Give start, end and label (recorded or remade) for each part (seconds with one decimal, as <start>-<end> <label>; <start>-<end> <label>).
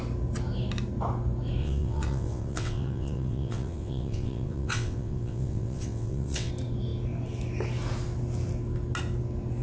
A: 0.0-1.6 recorded; 1.6-6.5 remade; 6.5-9.6 recorded